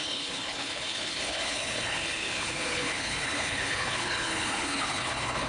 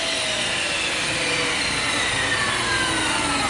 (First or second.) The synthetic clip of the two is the first